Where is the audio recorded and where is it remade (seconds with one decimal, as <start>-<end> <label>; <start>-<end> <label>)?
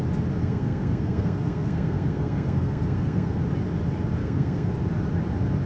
0.0-0.4 recorded; 0.4-3.4 remade; 3.4-4.2 recorded; 4.2-4.7 remade; 4.7-5.7 recorded